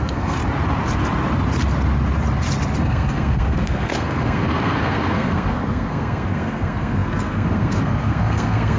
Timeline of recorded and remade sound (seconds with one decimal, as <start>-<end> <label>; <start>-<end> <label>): 0.0-0.4 remade; 0.4-2.8 recorded; 2.8-8.8 remade